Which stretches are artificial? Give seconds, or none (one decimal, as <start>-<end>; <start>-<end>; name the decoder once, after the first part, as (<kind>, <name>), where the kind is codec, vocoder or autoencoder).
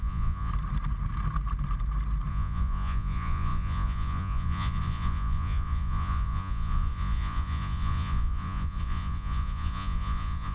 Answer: 0.0-0.5 (vocoder, Vocos); 2.3-10.5